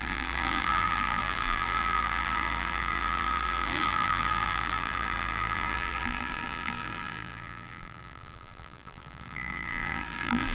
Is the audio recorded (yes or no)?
no